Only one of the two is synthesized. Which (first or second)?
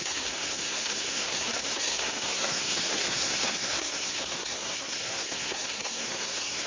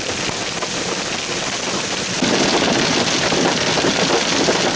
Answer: first